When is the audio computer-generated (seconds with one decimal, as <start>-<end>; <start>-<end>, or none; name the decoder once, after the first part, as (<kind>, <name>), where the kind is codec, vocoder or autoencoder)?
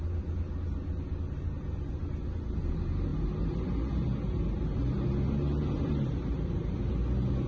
none